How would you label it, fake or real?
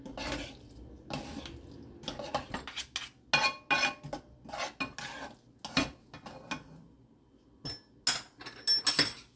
real